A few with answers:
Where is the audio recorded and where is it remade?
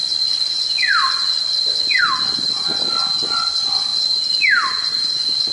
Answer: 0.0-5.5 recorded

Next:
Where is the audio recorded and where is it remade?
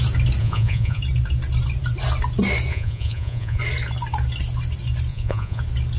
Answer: 0.0-0.4 recorded; 0.4-1.0 remade; 1.0-2.7 recorded; 2.7-3.6 remade; 3.6-5.1 recorded; 5.1-5.6 remade; 5.6-6.0 recorded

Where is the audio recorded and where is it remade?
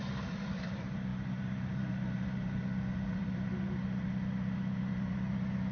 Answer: 0.0-5.7 remade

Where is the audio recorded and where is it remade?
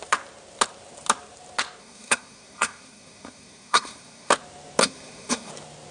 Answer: 0.0-1.8 recorded; 1.8-4.3 remade; 4.3-4.8 recorded; 4.8-5.5 remade; 5.5-5.9 recorded